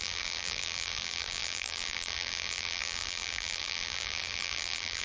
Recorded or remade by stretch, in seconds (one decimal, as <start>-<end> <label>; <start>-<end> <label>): 0.0-5.0 remade